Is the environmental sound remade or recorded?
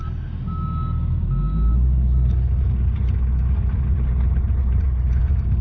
recorded